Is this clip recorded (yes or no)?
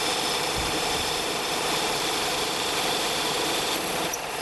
no